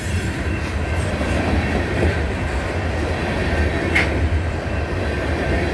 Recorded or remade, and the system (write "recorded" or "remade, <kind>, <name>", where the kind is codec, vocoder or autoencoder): recorded